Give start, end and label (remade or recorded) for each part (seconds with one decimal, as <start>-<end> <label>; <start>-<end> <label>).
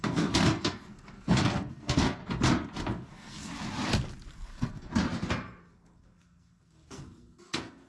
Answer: 0.0-2.2 remade; 2.2-2.8 recorded; 2.8-3.5 remade; 3.5-4.3 recorded; 4.3-4.9 remade; 4.9-5.7 recorded; 5.7-7.9 remade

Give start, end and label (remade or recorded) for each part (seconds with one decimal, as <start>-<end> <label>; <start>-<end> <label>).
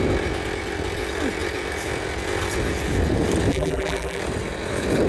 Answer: 0.0-3.5 recorded; 3.5-4.2 remade; 4.2-5.1 recorded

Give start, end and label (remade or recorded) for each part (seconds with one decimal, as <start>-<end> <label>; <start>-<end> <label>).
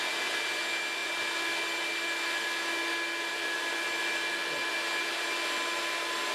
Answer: 0.0-6.3 recorded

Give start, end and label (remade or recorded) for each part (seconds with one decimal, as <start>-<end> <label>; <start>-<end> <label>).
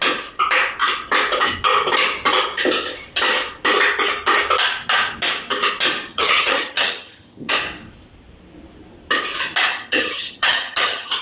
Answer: 0.0-6.1 recorded; 6.1-7.5 remade; 7.5-9.7 recorded; 9.7-11.2 remade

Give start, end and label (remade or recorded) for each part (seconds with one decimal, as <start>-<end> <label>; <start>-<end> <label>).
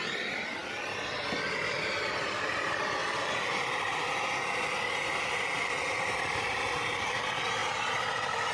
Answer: 0.0-8.5 recorded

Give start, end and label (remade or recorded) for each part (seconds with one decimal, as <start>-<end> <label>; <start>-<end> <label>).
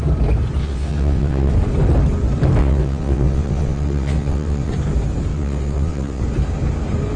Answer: 0.0-0.6 recorded; 0.6-1.5 remade; 1.5-2.6 recorded; 2.6-4.7 remade; 4.7-5.3 recorded; 5.3-6.2 remade; 6.2-7.2 recorded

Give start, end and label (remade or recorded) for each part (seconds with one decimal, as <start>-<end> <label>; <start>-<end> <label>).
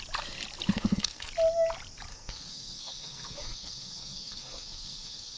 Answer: 0.0-0.7 recorded; 0.7-1.3 remade; 1.3-2.1 recorded; 2.1-5.4 remade